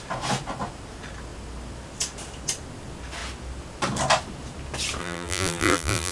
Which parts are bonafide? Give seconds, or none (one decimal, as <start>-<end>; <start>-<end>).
0.0-5.0